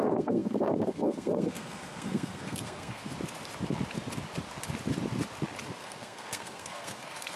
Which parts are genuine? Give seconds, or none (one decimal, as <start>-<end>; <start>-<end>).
3.1-5.8